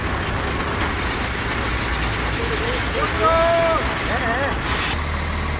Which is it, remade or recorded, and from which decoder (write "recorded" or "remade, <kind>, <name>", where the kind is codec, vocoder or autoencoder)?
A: recorded